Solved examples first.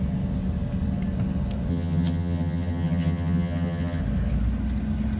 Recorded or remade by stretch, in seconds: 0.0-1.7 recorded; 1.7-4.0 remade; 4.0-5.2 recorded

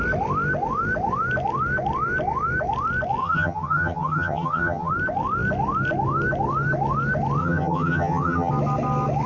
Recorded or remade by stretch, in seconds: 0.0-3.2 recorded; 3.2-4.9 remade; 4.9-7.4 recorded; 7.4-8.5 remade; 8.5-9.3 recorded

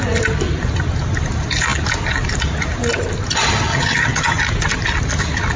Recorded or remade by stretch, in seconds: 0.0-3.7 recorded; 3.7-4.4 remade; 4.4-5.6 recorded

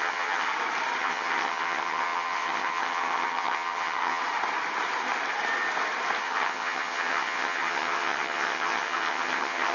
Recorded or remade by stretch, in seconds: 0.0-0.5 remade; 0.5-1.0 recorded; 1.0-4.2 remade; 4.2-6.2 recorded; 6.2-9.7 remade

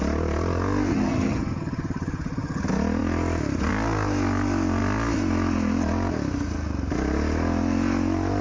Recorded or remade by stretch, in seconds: 0.0-0.9 recorded; 0.9-2.6 remade; 2.6-8.4 recorded

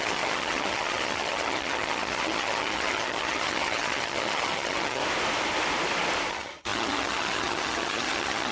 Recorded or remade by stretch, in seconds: 0.0-5.0 remade; 5.0-6.3 recorded; 6.3-8.5 remade